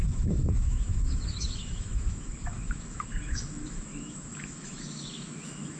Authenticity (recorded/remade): remade